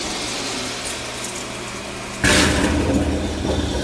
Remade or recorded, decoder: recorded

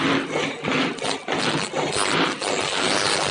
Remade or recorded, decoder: recorded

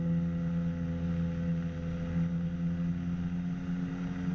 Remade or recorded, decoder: recorded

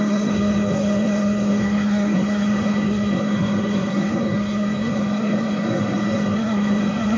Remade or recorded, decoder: remade, codec, SNAC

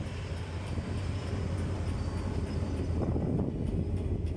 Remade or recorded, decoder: recorded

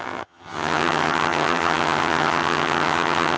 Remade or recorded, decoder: remade, vocoder, HiFi-GAN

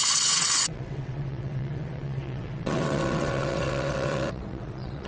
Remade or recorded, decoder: remade, vocoder, WaveNeXt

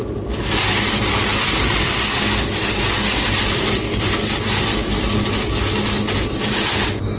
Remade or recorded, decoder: recorded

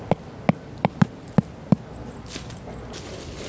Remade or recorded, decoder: recorded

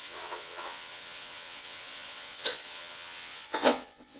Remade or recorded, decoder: remade, vocoder, WaveNeXt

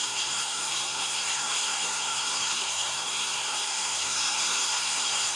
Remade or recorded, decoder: remade, codec, SNAC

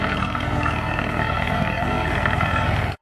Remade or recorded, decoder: remade, codec, SNAC